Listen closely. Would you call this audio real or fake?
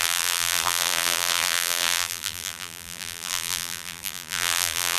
fake